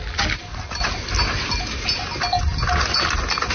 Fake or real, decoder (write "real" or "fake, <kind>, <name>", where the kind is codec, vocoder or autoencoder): real